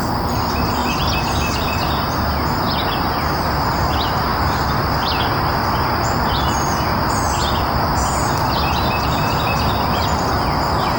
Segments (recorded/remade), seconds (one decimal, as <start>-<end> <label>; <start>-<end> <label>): 0.0-0.8 recorded; 0.8-1.6 remade; 1.6-10.1 recorded; 10.1-11.0 remade